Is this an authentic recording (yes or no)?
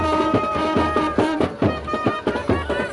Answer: no